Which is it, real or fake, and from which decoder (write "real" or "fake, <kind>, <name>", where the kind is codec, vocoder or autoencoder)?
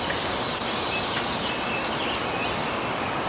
real